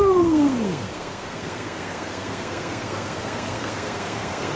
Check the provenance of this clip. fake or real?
fake